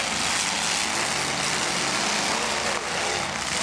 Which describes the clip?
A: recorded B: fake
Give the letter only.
A